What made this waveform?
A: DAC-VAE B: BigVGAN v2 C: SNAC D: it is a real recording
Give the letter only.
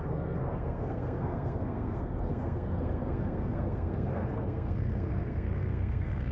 C